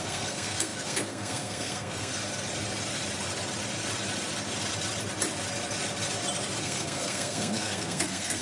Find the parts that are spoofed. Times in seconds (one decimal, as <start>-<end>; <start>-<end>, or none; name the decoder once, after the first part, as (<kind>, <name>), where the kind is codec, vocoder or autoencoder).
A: 0.0-2.1 (codec, SNAC); 6.6-8.4